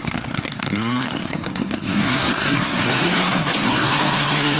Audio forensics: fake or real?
fake